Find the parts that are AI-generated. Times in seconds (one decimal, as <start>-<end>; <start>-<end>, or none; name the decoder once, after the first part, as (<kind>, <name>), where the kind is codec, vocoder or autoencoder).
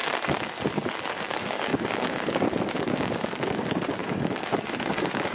1.1-5.3 (codec, DAC)